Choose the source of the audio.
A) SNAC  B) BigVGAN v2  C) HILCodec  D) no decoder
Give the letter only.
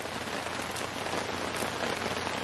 D